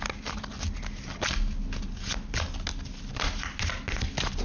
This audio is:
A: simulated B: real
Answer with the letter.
B